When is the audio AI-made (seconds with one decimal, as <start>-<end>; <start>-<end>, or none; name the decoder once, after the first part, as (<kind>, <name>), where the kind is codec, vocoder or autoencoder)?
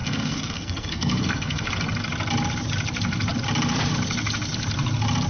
0.0-1.7 (codec, SNAC)